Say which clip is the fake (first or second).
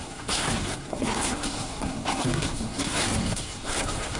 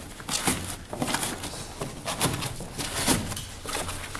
first